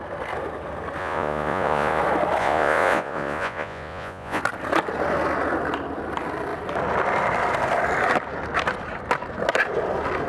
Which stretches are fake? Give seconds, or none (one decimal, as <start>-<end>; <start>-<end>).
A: 1.0-2.0; 2.4-4.4